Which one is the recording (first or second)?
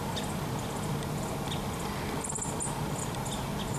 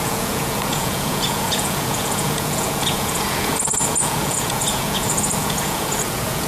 first